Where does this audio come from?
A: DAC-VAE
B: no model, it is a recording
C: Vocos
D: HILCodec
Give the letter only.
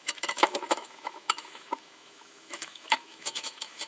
A